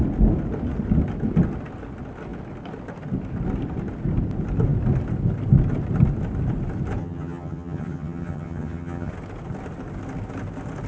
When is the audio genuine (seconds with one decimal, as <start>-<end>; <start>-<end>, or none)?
0.0-7.0; 9.1-10.9